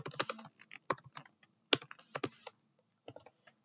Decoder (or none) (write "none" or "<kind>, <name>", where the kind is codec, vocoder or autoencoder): none